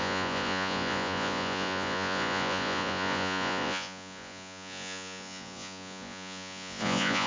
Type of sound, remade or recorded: remade